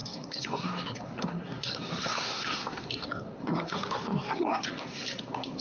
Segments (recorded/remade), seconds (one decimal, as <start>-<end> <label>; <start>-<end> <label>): 0.0-5.6 remade